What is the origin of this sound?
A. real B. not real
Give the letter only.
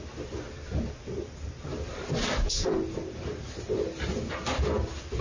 A